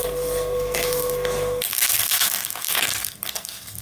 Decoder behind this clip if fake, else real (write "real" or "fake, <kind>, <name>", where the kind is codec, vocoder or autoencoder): fake, codec, SNAC